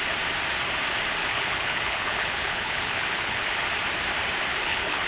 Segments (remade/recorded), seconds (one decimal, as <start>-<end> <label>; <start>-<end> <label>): 0.0-1.2 recorded; 1.2-3.5 remade; 3.5-4.5 recorded; 4.5-5.1 remade